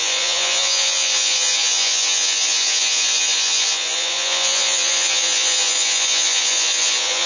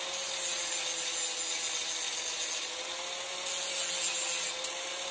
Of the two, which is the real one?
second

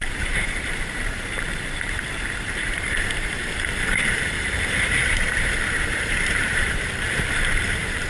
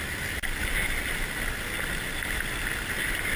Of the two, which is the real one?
second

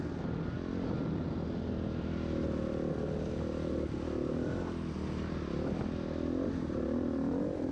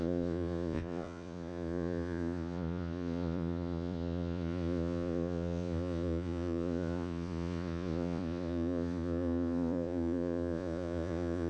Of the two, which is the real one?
first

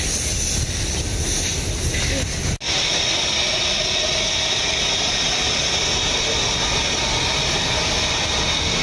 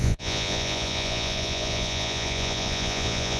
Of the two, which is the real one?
first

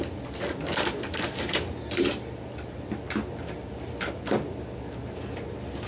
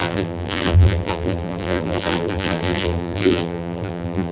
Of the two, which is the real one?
first